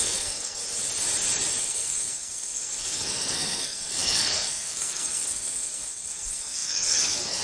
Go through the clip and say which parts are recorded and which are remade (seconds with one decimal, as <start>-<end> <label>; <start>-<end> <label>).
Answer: 0.0-0.6 remade; 0.6-1.6 recorded; 1.6-7.4 remade